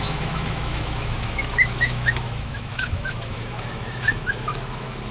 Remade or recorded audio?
remade